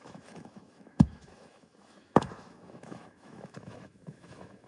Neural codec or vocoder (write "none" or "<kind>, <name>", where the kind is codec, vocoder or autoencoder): autoencoder, DAC-VAE